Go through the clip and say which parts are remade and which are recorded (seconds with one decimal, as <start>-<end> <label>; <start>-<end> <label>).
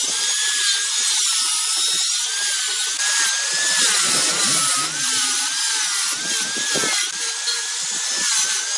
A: 0.0-8.8 recorded